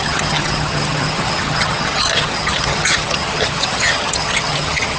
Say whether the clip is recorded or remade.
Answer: remade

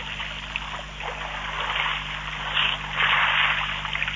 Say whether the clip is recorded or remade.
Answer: recorded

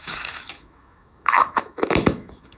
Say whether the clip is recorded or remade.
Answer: remade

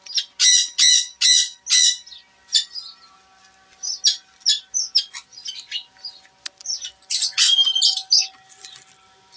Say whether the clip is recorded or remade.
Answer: recorded